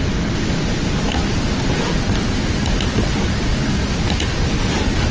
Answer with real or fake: real